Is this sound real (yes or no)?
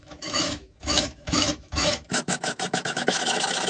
no